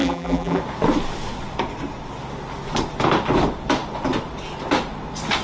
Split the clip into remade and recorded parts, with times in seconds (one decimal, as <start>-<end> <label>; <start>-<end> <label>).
0.0-0.6 remade; 0.6-5.4 recorded

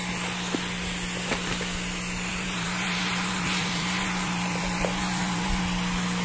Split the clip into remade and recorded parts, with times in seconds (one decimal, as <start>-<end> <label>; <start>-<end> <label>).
0.0-2.3 recorded; 2.3-5.6 remade; 5.6-6.2 recorded

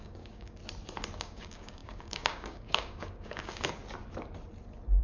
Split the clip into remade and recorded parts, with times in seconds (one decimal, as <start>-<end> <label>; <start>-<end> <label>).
0.0-0.6 remade; 0.6-1.2 recorded; 1.2-3.8 remade; 3.8-5.0 recorded

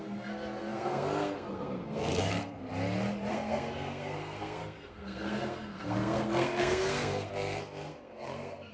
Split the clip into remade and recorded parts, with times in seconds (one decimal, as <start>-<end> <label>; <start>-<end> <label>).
0.0-2.6 remade; 2.6-3.3 recorded; 3.3-8.7 remade

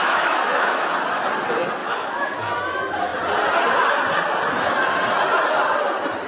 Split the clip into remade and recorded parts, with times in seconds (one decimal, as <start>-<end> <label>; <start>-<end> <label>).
0.0-0.9 remade; 0.9-1.8 recorded; 1.8-2.4 remade; 2.4-6.3 recorded

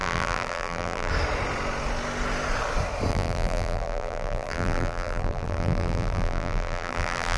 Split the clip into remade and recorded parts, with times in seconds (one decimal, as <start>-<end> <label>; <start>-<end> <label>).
0.0-1.1 remade; 1.1-3.1 recorded; 3.1-7.4 remade